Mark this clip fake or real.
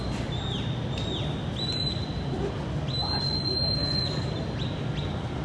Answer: real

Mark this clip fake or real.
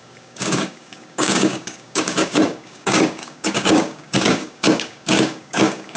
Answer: fake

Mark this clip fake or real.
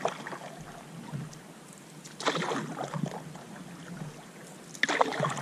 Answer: real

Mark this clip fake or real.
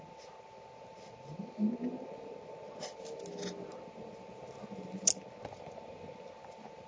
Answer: real